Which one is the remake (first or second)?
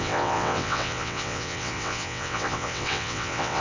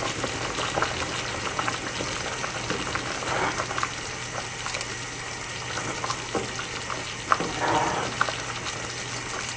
first